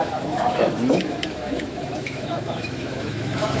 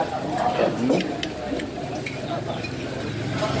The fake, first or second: first